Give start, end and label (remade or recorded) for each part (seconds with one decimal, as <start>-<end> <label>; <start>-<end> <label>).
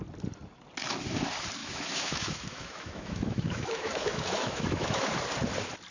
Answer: 0.0-1.6 recorded; 1.6-5.1 remade; 5.1-5.9 recorded